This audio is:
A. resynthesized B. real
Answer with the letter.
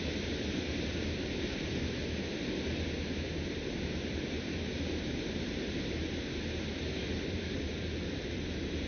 A